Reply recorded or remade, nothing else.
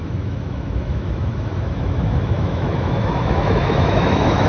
remade